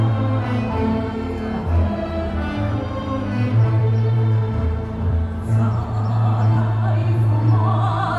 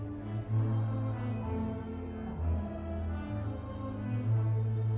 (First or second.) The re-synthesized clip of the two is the first